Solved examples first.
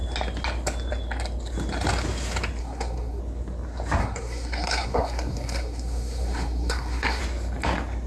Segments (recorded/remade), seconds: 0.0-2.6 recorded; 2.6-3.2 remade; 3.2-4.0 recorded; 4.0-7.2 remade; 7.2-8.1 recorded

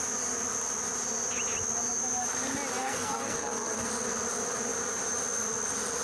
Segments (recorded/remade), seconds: 0.0-2.8 recorded; 2.8-3.9 remade; 3.9-6.0 recorded

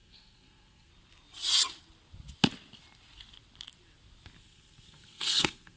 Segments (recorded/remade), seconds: 0.0-0.9 remade; 0.9-4.4 recorded; 4.4-5.8 remade

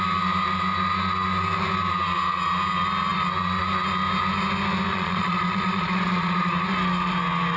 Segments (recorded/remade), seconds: 0.0-4.9 recorded; 4.9-6.5 remade; 6.5-7.6 recorded

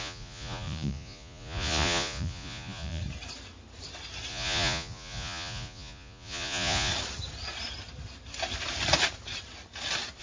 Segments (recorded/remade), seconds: 0.0-3.0 remade; 3.0-4.3 recorded; 4.3-6.9 remade; 6.9-10.2 recorded

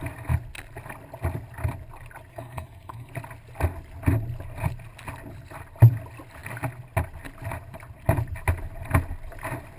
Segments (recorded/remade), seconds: 0.0-2.3 recorded; 2.3-3.1 remade; 3.1-9.8 recorded

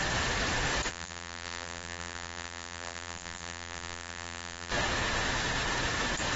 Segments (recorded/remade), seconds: 0.0-0.9 recorded; 0.9-4.7 remade; 4.7-6.4 recorded

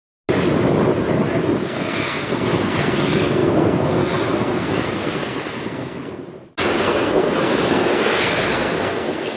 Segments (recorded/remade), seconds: 0.0-1.6 recorded; 1.6-6.2 remade; 6.2-6.8 recorded; 6.8-9.4 remade